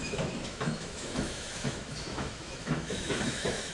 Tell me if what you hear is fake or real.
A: fake